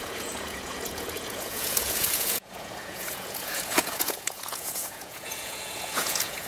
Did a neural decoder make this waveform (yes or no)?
yes